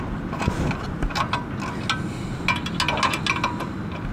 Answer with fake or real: real